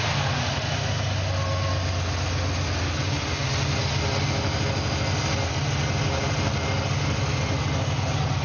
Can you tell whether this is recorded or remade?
recorded